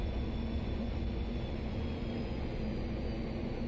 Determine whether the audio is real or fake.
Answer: fake